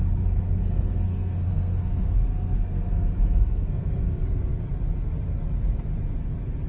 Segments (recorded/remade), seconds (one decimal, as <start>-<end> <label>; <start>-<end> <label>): 0.0-4.0 remade; 4.0-6.7 recorded